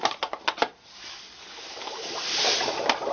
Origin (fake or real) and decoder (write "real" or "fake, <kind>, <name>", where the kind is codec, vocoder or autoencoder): real